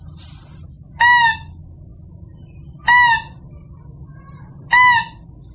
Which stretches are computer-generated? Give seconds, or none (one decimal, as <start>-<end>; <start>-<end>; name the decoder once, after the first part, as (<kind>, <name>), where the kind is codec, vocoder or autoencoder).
none